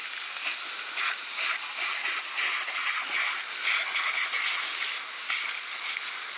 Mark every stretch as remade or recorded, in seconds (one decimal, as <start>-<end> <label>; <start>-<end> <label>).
0.0-6.4 recorded